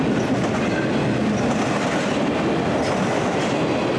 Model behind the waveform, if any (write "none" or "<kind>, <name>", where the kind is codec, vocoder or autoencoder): none